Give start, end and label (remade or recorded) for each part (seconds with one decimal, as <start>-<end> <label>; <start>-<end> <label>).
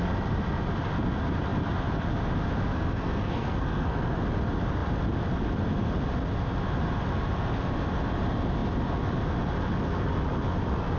0.0-2.7 recorded; 2.7-4.2 remade; 4.2-11.0 recorded